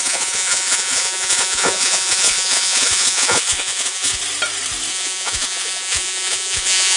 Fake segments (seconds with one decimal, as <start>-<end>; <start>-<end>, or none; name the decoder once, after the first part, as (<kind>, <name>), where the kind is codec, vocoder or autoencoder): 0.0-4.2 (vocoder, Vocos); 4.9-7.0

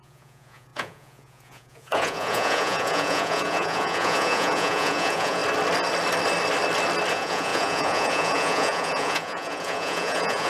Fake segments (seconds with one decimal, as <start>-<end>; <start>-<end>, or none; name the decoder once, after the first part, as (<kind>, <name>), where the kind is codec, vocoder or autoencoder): 0.0-5.4 (vocoder, Vocos); 7.1-10.5

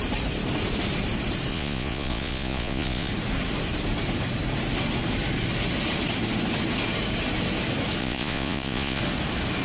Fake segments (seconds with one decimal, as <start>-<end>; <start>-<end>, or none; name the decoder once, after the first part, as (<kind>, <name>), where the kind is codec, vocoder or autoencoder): 1.5-3.1 (vocoder, Vocos); 8.0-9.0

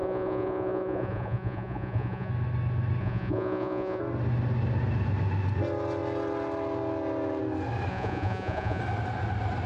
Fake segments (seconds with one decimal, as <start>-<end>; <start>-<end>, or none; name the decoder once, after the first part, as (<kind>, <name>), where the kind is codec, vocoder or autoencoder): 0.0-2.3 (vocoder, Vocos); 3.0-4.0; 7.9-8.8

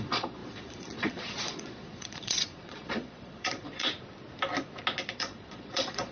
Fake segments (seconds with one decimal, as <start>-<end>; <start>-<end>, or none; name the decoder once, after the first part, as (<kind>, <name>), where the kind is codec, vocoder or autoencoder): 0.0-3.9 (vocoder, Vocos); 5.1-6.1

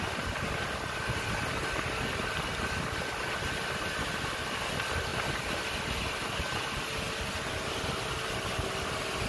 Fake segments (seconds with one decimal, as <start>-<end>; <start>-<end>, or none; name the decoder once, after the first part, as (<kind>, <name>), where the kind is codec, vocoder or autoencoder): none

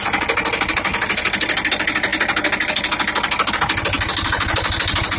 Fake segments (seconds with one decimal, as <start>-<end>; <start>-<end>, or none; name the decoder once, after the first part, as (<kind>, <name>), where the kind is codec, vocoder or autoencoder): none